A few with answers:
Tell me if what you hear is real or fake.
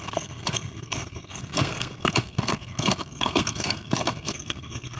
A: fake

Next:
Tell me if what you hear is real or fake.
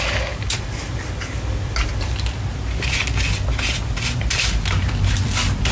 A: real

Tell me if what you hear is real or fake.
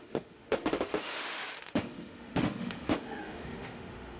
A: fake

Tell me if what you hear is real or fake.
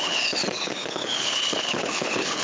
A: fake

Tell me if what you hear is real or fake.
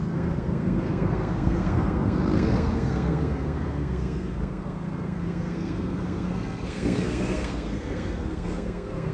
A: fake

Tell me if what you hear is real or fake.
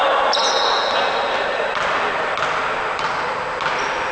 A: real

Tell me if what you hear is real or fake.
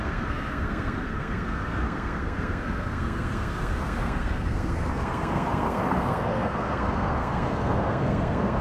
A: fake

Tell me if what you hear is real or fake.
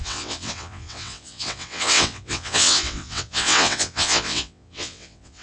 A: fake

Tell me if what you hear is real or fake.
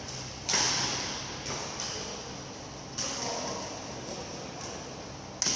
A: real